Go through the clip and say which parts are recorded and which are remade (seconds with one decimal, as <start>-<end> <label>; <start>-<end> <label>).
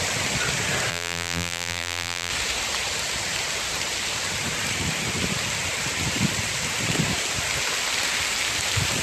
0.0-0.9 recorded; 0.9-2.3 remade; 2.3-9.0 recorded